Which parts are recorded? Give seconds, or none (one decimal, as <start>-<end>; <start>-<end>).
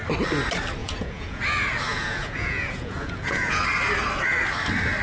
0.0-0.8; 1.4-1.9; 3.6-5.0